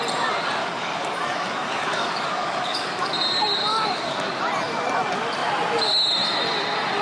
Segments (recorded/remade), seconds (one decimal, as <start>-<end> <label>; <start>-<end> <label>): 0.0-0.6 recorded; 0.6-3.1 remade; 3.1-3.7 recorded; 3.7-4.4 remade; 4.4-7.0 recorded